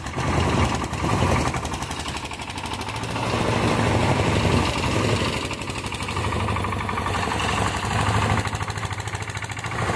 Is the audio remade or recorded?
recorded